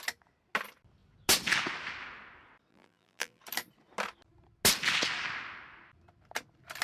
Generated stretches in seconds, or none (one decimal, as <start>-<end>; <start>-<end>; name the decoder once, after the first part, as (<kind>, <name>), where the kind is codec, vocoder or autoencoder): 2.7-3.4 (vocoder, BigVGAN v2)